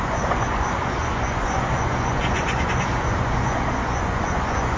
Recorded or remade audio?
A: remade